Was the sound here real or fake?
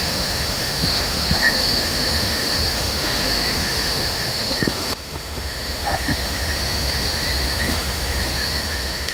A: fake